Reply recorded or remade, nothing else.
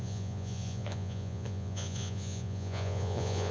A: remade